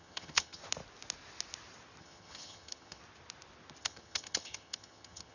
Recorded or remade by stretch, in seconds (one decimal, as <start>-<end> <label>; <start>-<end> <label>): 0.0-0.6 remade; 0.6-2.0 recorded; 2.0-3.0 remade; 3.0-3.8 recorded; 3.8-5.3 remade